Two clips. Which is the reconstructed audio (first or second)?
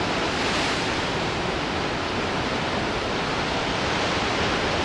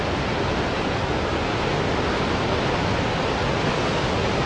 first